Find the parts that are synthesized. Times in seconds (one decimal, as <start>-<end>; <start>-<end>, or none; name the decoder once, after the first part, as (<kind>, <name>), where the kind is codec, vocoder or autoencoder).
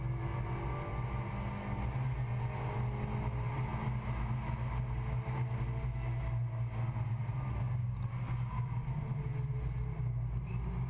none